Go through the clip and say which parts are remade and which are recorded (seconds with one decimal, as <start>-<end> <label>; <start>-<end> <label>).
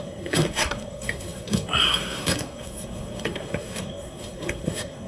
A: 0.0-5.1 remade